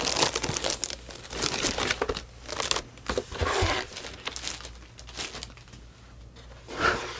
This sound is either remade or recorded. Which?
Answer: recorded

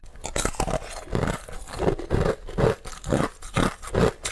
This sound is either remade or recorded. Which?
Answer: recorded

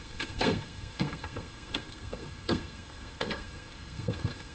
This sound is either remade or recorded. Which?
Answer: remade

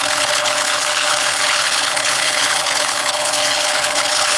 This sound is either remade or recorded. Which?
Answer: remade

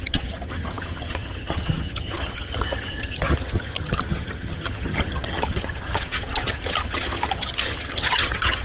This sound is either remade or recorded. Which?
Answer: remade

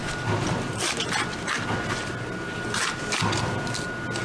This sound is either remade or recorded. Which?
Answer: recorded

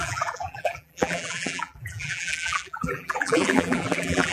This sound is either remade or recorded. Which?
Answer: remade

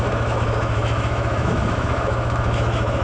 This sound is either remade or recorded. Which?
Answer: remade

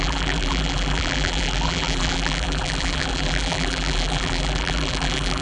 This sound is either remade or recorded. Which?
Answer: remade